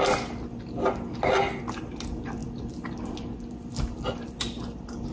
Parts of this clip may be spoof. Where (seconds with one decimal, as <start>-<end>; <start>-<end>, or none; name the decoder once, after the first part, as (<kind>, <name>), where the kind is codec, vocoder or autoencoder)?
none